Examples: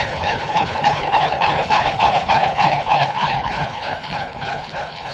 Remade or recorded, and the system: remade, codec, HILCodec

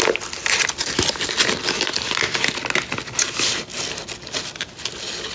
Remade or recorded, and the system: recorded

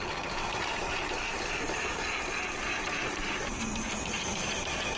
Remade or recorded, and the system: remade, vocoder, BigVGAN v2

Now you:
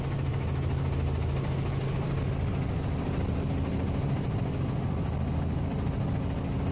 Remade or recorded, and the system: recorded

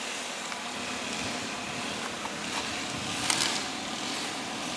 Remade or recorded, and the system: recorded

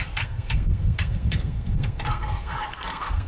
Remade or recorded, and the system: remade, codec, SNAC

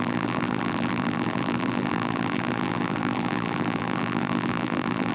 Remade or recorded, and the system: remade, vocoder, BigVGAN v2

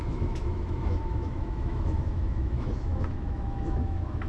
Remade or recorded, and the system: remade, autoencoder, DAC-VAE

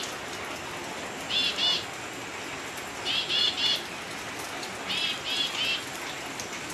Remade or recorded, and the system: recorded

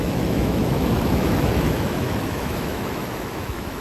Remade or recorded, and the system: remade, autoencoder, DAC-VAE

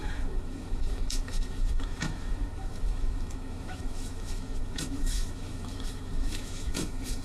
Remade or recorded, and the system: remade, autoencoder, DAC-VAE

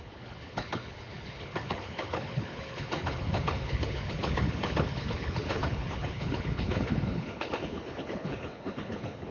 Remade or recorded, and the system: remade, codec, HILCodec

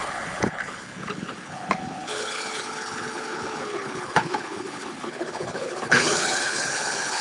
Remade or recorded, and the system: remade, codec, HILCodec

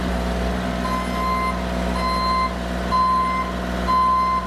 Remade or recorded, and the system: recorded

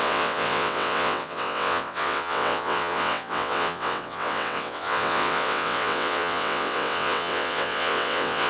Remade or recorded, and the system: remade, vocoder, WaveNeXt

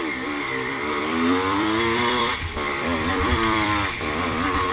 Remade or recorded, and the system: remade, vocoder, BigVGAN v2